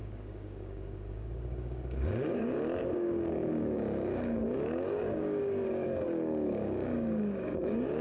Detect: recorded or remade remade